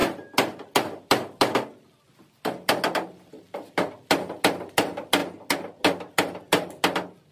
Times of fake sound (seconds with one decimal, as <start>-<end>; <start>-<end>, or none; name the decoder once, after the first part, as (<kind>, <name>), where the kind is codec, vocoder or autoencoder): none

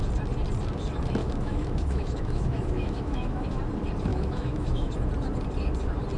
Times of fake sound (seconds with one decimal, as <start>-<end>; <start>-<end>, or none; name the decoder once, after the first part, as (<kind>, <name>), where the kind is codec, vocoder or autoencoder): 1.2-3.6 (autoencoder, DAC-VAE); 4.1-4.9

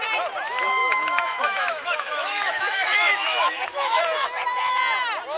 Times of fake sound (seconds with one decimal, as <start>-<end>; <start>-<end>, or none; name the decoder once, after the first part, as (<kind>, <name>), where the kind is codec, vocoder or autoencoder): 0.8-4.0 (autoencoder, DAC-VAE)